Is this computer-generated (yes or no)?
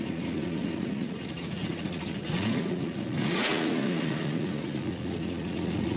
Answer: yes